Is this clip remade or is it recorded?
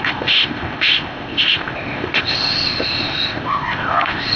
remade